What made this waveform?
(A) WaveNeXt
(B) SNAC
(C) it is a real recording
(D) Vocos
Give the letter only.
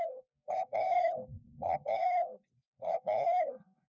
B